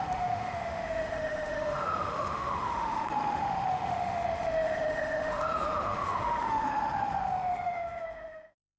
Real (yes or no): no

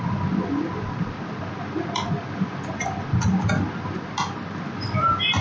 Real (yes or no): yes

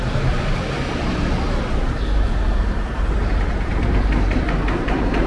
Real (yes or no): no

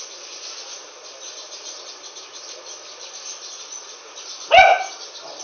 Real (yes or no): yes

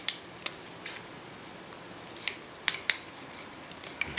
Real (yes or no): yes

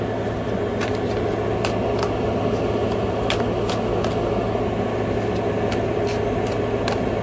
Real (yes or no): yes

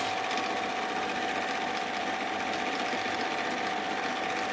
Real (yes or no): yes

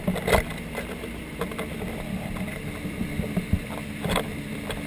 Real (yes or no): no